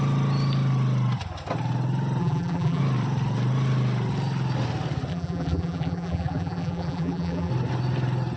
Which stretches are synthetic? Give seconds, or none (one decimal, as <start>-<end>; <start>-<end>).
2.2-2.8; 5.1-7.5